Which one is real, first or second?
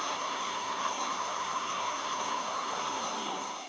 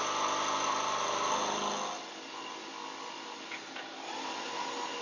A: second